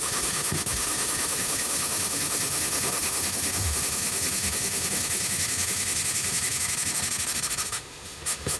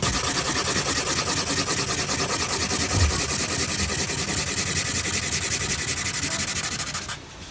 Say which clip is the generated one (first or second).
first